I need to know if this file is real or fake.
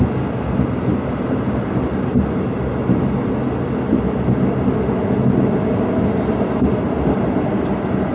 real